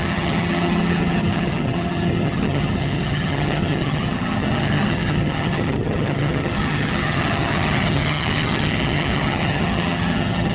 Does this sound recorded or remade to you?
remade